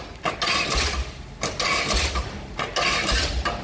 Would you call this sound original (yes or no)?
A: yes